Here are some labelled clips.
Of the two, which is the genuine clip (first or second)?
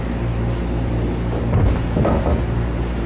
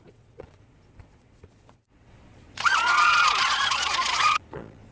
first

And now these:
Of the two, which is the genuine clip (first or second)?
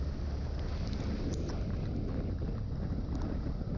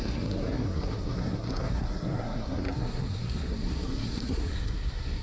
first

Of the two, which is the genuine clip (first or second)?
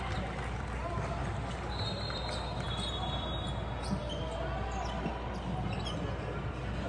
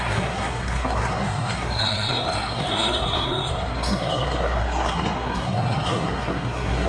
first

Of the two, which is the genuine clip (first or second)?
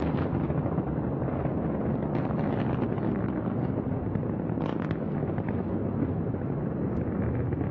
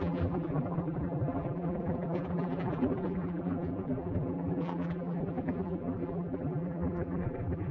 first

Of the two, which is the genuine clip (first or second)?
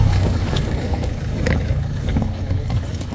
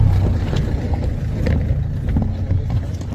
second